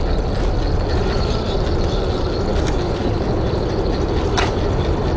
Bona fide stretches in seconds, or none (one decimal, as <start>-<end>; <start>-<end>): 0.0-5.2